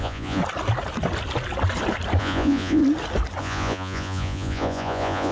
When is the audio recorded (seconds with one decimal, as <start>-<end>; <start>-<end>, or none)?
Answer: 0.4-2.2; 2.8-3.4